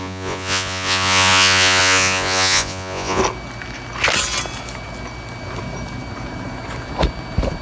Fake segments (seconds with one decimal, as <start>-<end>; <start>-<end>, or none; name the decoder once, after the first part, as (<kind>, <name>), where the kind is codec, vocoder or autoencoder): 0.0-3.2 (vocoder, Vocos)